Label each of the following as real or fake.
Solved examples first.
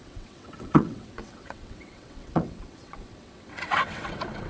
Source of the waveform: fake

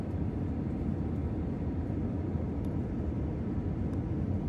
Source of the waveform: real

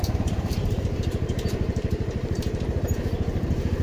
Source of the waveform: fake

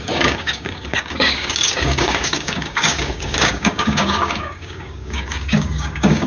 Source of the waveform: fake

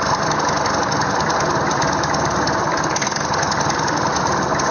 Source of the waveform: real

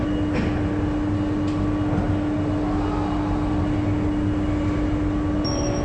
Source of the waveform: real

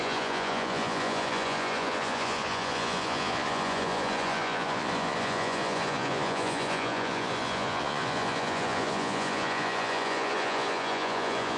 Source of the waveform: fake